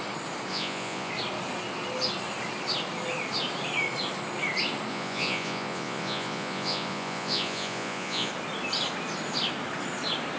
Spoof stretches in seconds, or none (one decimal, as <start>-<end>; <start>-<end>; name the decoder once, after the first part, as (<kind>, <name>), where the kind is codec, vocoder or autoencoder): 0.5-1.1 (vocoder, Vocos); 4.9-8.3